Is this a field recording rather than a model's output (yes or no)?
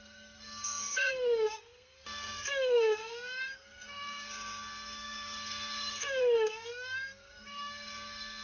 no